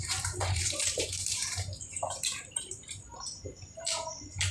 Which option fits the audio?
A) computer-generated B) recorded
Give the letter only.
A